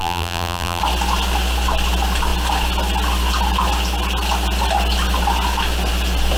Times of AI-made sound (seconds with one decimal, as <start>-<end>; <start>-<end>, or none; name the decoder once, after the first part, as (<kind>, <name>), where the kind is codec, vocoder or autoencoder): 0.0-0.8 (vocoder, BigVGAN v2)